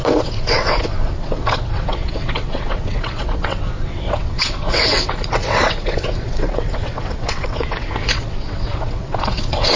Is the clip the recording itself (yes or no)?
no